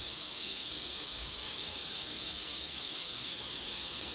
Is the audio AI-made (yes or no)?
yes